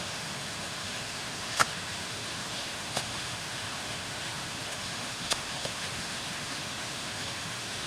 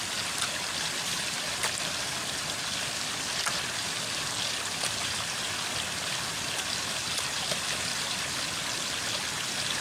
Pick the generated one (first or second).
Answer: first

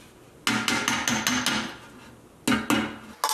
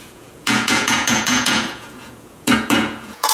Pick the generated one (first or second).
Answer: second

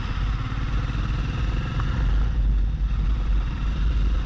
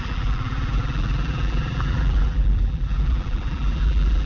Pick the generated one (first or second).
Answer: second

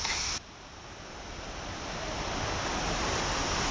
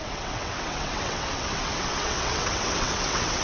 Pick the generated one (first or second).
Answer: second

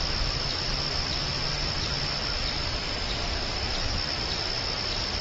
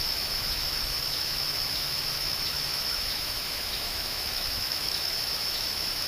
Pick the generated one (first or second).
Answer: second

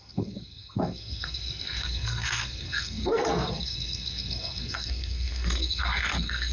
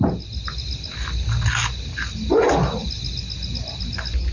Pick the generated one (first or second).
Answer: first